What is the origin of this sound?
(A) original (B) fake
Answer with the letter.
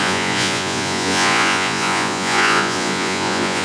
B